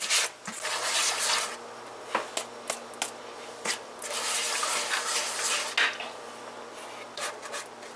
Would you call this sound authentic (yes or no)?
yes